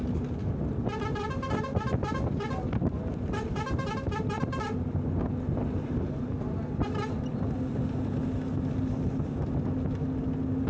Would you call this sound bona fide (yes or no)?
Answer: yes